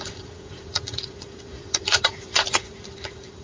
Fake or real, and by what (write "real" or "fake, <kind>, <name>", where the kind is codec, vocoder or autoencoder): fake, vocoder, Vocos